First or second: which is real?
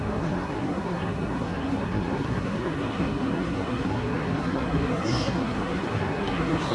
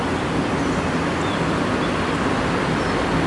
second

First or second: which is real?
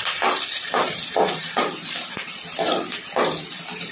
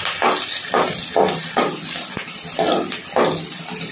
second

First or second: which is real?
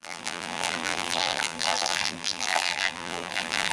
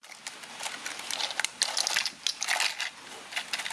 second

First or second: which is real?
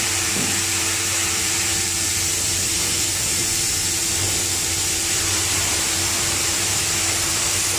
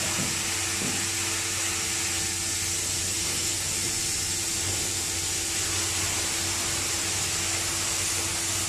second